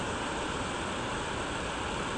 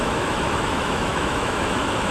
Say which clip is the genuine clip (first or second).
first